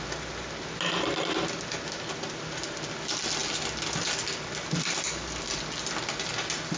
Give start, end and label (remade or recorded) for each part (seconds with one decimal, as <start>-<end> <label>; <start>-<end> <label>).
0.0-6.8 recorded